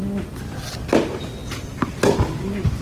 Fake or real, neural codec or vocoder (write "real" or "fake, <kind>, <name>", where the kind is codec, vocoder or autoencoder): real